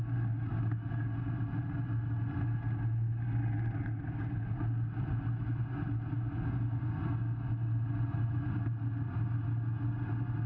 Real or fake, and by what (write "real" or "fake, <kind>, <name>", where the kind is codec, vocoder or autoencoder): real